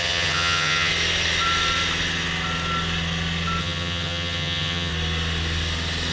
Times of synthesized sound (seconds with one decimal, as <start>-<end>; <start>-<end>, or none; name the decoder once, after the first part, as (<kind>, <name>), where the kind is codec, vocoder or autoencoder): 0.0-0.9 (vocoder, HiFi-GAN); 3.6-4.9